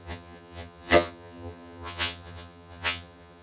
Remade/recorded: remade